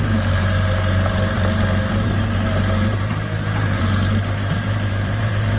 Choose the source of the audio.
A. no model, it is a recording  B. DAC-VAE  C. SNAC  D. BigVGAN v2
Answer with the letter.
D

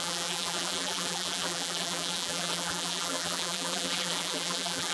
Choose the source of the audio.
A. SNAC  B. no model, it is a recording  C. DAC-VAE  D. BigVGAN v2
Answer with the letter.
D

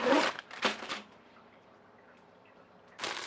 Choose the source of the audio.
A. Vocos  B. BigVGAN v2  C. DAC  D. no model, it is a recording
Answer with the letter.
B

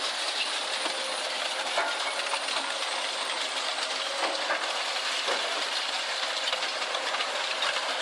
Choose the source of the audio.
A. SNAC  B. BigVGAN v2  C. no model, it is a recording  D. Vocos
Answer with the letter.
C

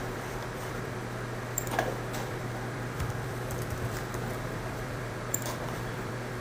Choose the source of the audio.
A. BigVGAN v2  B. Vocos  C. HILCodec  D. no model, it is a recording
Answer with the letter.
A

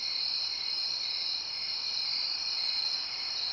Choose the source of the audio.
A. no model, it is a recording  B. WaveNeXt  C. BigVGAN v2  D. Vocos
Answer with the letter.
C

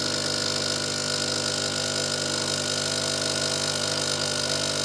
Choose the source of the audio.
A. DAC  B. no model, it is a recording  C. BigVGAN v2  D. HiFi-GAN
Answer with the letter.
B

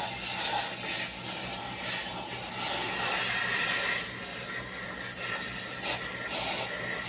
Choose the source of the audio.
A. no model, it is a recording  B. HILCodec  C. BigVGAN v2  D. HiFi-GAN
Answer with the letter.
A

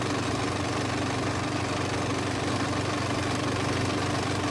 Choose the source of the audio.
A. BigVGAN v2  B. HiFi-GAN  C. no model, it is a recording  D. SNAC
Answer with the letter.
C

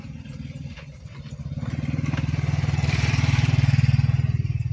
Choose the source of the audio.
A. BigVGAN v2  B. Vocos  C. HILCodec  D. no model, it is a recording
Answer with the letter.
A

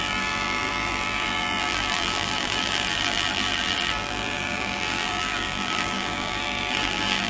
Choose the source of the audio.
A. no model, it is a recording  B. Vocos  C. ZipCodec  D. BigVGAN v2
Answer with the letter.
D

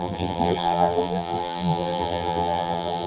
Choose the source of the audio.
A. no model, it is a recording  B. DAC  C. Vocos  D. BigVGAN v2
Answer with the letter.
D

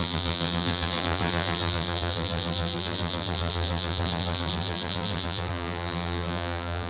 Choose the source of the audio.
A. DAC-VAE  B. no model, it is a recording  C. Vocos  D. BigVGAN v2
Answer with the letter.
D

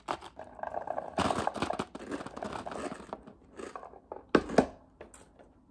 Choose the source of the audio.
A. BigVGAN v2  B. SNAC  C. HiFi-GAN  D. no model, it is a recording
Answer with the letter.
D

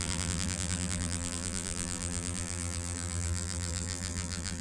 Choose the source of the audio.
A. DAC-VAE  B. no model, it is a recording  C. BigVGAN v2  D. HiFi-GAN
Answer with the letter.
C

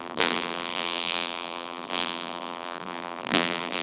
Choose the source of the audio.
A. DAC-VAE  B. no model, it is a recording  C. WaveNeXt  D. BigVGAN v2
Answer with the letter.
D